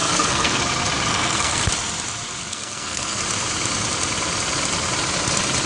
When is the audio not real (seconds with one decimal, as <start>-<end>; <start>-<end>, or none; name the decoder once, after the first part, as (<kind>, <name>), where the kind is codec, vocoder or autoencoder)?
0.0-0.6 (codec, SNAC); 1.1-1.6; 2.4-3.2